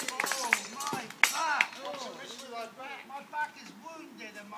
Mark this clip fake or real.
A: real